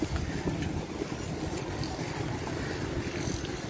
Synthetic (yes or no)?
no